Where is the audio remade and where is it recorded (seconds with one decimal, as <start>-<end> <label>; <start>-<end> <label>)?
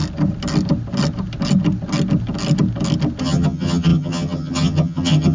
0.0-3.2 recorded; 3.2-5.3 remade